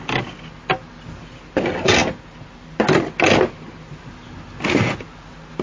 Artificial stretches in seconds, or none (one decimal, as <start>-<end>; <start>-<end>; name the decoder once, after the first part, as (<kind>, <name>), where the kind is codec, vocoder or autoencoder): none